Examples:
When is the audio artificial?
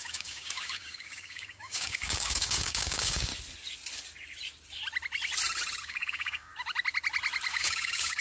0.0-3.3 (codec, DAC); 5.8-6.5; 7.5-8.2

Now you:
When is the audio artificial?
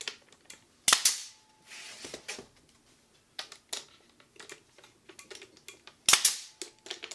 none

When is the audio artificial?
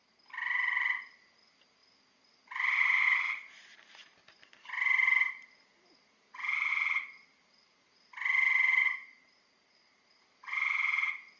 8.8-10.2 (vocoder, Vocos)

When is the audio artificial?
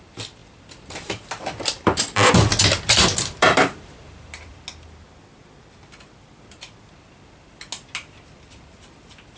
0.4-4.6 (vocoder, BigVGAN v2)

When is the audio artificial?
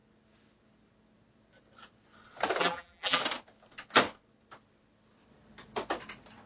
2.6-3.2 (vocoder, BigVGAN v2)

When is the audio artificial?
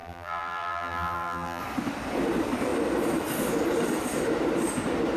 0.0-1.6 (vocoder, BigVGAN v2)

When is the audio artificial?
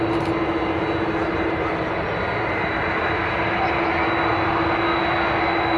none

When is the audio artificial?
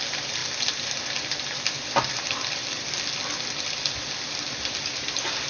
none